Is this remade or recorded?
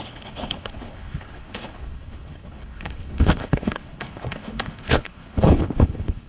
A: remade